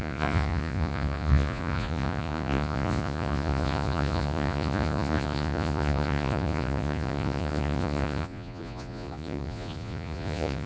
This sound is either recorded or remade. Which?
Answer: remade